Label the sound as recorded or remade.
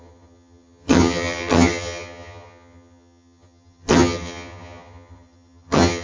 remade